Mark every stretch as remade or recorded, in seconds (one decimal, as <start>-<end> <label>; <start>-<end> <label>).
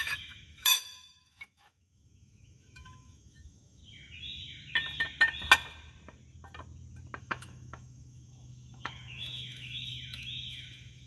0.0-3.8 remade; 3.8-7.2 recorded; 7.2-11.1 remade